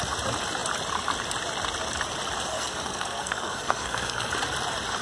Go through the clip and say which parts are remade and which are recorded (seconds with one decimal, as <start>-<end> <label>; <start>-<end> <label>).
0.0-2.5 recorded; 2.5-4.3 remade; 4.3-5.0 recorded